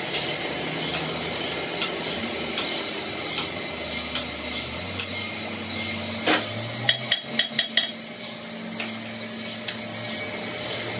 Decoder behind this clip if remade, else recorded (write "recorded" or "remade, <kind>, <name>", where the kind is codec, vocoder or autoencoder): recorded